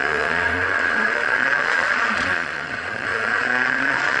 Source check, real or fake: fake